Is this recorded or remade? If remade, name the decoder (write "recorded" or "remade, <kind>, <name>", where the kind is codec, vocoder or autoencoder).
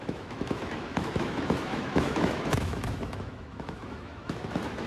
remade, autoencoder, DAC-VAE